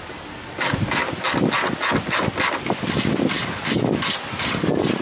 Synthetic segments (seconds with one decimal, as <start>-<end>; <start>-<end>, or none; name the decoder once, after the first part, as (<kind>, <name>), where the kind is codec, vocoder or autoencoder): none